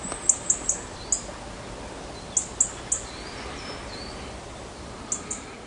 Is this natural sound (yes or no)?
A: yes